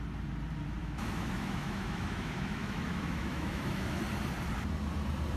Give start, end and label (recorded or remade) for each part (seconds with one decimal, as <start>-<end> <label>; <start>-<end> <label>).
0.0-0.8 recorded; 0.8-4.0 remade; 4.0-5.4 recorded